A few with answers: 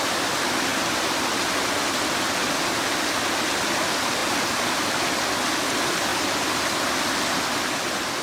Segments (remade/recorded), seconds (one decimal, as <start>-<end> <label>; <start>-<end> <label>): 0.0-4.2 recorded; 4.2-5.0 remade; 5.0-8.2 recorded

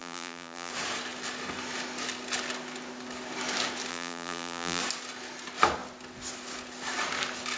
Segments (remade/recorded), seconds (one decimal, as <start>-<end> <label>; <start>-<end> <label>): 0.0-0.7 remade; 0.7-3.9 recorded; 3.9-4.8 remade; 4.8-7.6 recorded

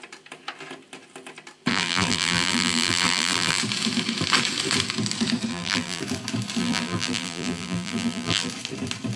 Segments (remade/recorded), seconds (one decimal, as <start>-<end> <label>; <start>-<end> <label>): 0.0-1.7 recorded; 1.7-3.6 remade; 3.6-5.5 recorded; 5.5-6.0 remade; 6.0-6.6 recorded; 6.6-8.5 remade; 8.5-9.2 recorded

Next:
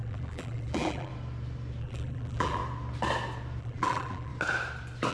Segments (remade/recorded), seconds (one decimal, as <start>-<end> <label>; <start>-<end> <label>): 0.0-1.1 remade; 1.1-1.8 recorded; 1.8-2.6 remade; 2.6-3.6 recorded; 3.6-4.3 remade; 4.3-5.1 recorded